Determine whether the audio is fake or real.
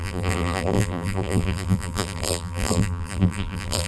fake